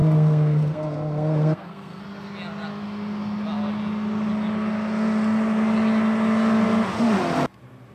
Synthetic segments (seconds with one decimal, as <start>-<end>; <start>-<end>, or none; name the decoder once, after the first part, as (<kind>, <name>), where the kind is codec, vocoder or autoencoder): 0.0-2.0 (codec, SNAC)